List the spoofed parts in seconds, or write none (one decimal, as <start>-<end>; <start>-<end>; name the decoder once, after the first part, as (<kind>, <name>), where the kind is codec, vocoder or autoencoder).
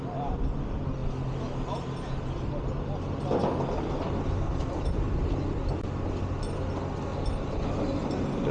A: 7.1-7.6 (vocoder, BigVGAN v2)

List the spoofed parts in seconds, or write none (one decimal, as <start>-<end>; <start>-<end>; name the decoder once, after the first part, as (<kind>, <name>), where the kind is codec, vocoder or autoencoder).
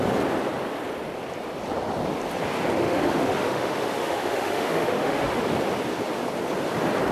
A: 2.8-5.4 (autoencoder, DAC-VAE)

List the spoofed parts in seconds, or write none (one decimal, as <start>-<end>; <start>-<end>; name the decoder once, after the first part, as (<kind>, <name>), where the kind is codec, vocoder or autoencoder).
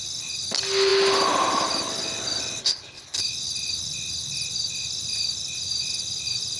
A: 2.6-3.2 (codec, HILCodec)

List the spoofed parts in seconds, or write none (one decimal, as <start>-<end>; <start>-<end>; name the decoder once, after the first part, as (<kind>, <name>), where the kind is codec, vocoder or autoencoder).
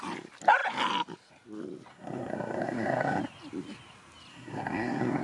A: 1.9-3.2 (codec, SNAC); 4.3-5.2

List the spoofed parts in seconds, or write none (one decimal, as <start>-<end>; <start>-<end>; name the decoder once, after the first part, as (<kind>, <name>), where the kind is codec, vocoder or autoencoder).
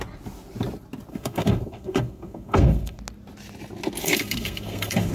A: 1.1-3.0 (codec, SNAC); 4.0-5.1